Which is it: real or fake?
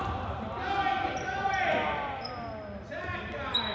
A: real